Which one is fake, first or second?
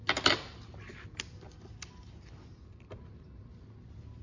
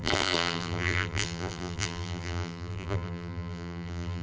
second